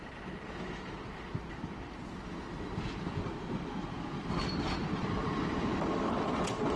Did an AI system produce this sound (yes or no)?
yes